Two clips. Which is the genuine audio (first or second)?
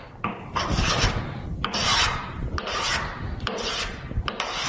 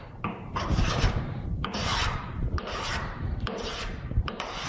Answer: first